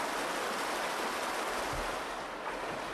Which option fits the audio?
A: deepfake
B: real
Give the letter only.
B